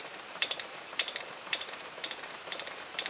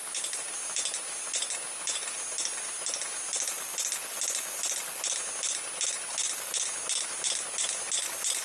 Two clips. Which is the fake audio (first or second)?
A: first